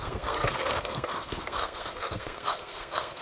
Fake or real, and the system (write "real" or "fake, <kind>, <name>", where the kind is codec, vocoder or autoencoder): fake, codec, SNAC